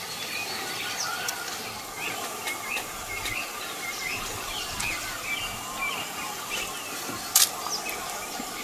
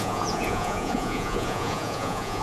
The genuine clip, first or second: first